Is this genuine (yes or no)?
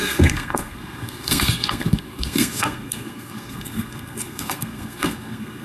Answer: no